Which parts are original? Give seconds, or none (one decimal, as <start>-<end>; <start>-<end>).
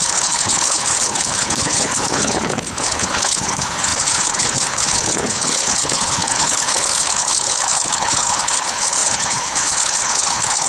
none